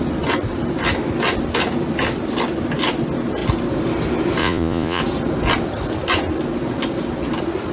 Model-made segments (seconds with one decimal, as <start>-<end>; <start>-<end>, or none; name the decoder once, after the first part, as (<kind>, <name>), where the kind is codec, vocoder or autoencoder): 4.4-5.0 (vocoder, Vocos)